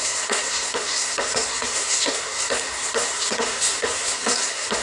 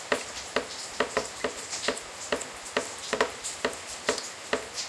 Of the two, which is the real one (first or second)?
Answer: second